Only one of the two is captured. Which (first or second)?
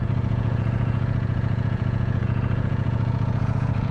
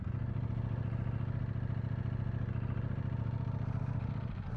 second